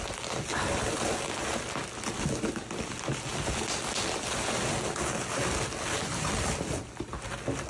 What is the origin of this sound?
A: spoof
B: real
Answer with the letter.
B